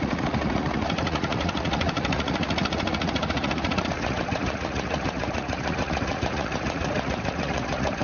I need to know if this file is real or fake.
fake